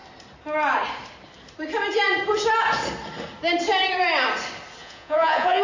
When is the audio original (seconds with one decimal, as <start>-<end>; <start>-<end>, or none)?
0.0-4.8